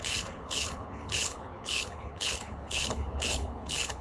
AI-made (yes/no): yes